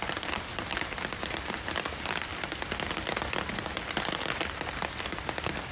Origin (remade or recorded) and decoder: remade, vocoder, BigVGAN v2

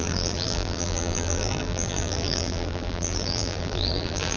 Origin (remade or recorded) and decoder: remade, vocoder, BigVGAN v2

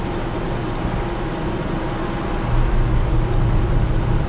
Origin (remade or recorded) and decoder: recorded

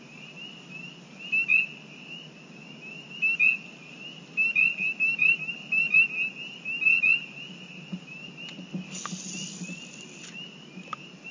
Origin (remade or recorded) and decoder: recorded